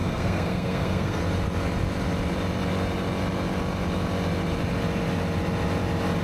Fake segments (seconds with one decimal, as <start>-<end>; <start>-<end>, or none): 0.0-1.2